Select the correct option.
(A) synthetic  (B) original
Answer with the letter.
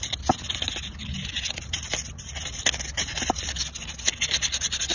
B